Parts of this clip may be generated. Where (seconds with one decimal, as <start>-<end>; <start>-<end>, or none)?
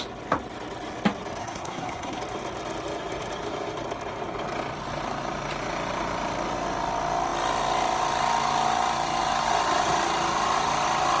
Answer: 1.4-2.2